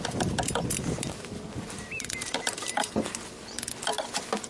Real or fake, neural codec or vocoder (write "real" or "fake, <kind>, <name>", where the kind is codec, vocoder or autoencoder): real